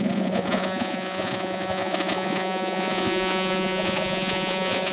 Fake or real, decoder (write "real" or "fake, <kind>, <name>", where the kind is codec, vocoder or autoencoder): fake, vocoder, Vocos